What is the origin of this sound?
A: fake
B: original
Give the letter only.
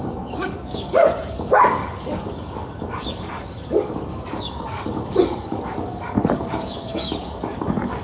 A